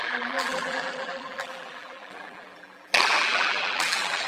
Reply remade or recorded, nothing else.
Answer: remade